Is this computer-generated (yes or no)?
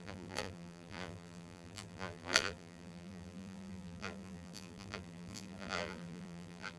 yes